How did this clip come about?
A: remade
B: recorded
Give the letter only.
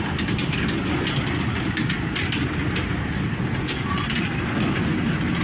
B